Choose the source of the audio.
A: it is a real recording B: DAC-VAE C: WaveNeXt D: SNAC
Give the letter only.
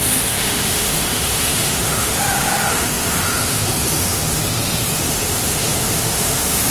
B